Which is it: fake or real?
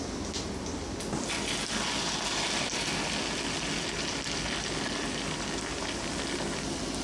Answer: real